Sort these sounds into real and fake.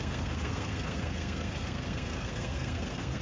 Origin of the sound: fake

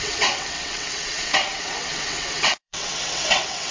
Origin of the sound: fake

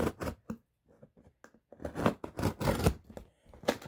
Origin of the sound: real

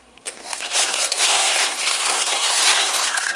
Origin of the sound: fake